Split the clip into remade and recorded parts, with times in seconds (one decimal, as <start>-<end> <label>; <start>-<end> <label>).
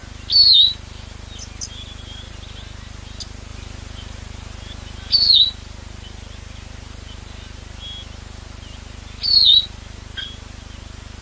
0.0-11.2 recorded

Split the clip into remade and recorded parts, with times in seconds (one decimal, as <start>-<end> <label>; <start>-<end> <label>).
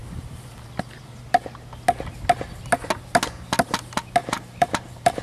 0.0-1.2 remade; 1.2-4.2 recorded; 4.2-5.2 remade